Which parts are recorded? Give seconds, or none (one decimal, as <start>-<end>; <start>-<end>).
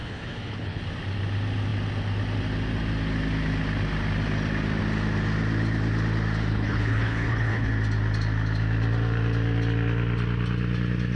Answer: 0.8-6.5; 7.7-11.2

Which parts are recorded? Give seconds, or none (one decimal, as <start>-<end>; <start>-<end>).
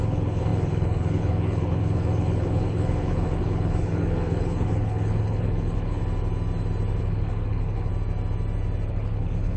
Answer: 6.0-7.0; 7.9-8.9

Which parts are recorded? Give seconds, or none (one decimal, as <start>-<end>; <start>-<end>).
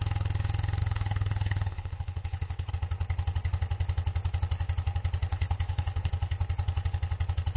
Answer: 0.0-0.8; 2.7-5.3; 6.1-7.6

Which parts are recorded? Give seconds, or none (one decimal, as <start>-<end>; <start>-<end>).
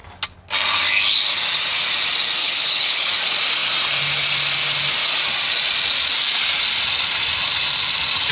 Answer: 0.0-2.4; 3.1-8.3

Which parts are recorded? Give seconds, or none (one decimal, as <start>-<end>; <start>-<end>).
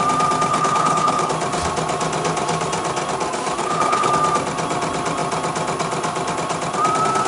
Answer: 0.0-0.5; 1.3-3.6; 4.1-7.3